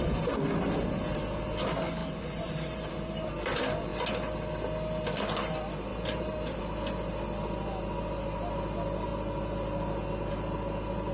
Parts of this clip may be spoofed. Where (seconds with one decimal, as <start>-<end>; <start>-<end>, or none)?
2.0-3.3; 5.9-6.6